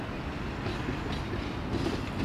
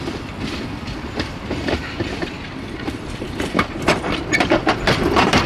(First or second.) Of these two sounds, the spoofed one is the second